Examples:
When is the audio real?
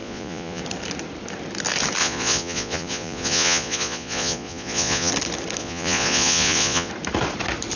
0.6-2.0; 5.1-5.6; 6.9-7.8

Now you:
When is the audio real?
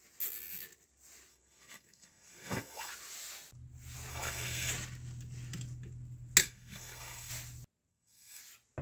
0.0-1.3; 2.9-4.1; 4.7-6.4; 7.3-7.9; 8.4-8.8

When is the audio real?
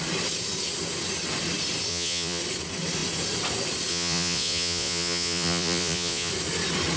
0.0-1.9; 2.4-3.9; 6.3-7.0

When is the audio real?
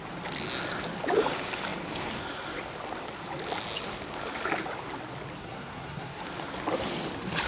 0.0-5.4; 6.2-7.5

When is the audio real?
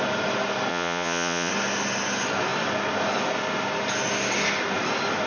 0.0-0.7; 1.5-5.3